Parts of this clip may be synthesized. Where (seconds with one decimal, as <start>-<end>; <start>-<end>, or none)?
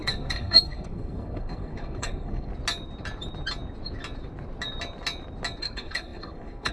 0.0-2.5; 5.6-6.7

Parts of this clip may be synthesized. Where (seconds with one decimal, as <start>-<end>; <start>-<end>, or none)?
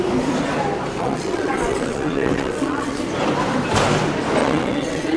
1.0-3.0; 4.4-5.2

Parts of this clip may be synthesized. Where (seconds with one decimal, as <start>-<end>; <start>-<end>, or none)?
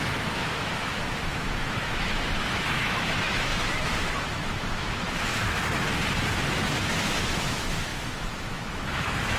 0.0-3.5; 4.0-5.3; 6.9-9.4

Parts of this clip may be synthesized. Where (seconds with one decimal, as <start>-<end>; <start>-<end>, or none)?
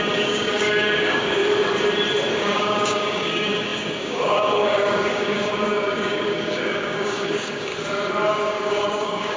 0.0-1.4; 2.3-7.7; 8.3-9.4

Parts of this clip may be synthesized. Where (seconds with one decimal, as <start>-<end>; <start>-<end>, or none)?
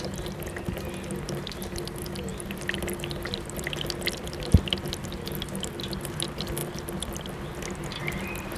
none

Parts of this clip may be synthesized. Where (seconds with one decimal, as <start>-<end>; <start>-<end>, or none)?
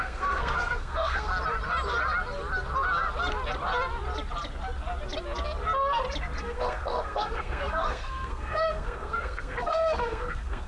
0.0-1.3; 6.4-10.7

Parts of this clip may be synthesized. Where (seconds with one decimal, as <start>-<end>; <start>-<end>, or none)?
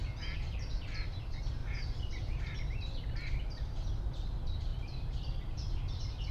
0.0-0.7; 1.6-4.0; 4.7-5.8